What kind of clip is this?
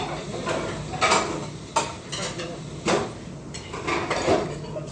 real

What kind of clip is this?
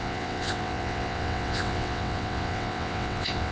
fake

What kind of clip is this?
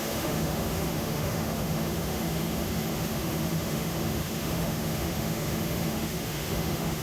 fake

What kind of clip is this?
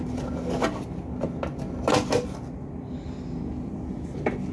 real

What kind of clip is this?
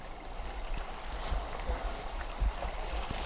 real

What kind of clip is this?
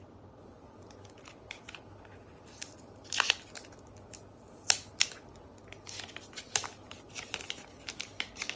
real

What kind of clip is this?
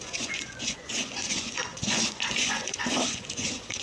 fake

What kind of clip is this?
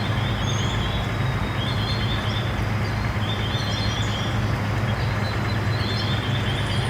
real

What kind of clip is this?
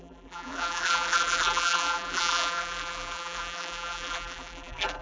fake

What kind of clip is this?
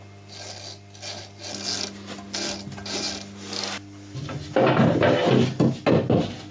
real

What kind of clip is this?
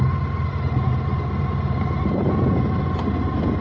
real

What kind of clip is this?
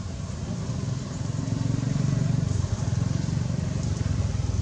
real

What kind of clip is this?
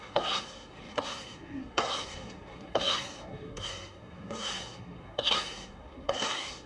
fake